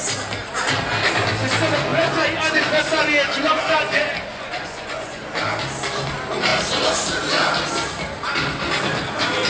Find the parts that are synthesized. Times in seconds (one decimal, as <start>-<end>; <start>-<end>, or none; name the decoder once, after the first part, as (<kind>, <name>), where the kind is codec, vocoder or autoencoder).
4.3-5.2 (vocoder, Vocos)